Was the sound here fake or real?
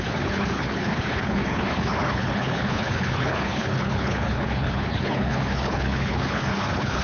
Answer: fake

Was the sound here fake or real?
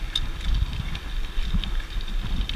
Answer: real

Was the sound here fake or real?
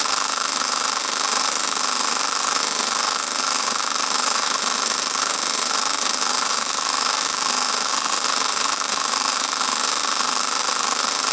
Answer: fake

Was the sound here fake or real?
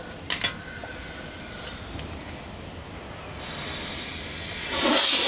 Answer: real